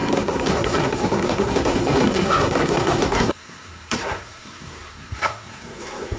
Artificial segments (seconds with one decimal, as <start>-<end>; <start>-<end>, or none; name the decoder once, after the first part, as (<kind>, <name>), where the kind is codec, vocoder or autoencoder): 0.0-6.2 (codec, SNAC)